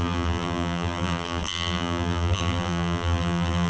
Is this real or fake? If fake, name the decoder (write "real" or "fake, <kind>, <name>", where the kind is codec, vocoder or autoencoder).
fake, vocoder, BigVGAN v2